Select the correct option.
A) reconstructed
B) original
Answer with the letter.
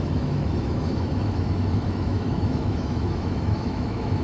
A